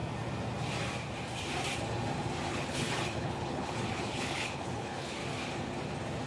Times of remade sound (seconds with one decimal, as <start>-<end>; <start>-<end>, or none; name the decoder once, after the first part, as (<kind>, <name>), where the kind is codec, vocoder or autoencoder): 2.5-5.2 (codec, HILCodec)